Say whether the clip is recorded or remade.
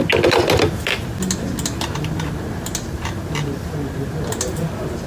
recorded